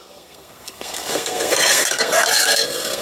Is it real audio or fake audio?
fake